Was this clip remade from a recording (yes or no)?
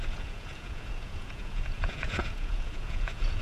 yes